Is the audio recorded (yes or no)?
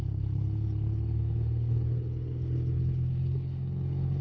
no